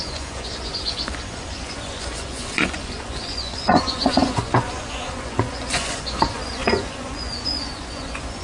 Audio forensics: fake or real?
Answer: fake